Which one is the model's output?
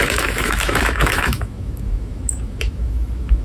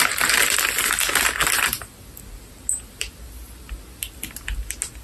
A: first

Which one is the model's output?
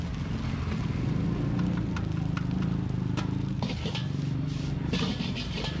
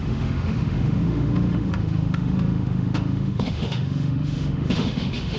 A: second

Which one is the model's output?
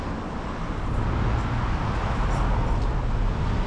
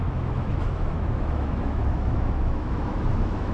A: second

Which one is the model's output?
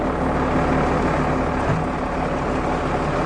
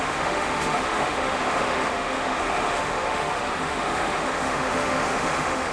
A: second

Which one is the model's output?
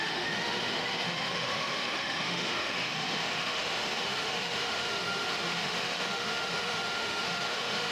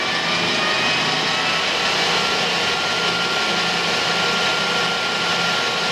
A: first